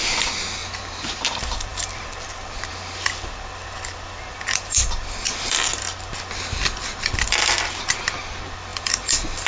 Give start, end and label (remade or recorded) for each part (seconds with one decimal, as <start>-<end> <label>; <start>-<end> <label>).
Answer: 0.0-0.6 remade; 0.6-1.2 recorded; 1.2-9.5 remade